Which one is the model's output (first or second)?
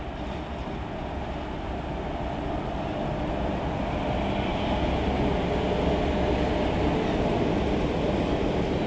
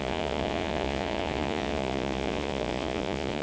second